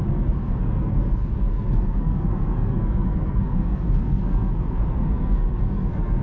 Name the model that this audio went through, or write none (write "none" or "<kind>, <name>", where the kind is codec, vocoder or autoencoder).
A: codec, SNAC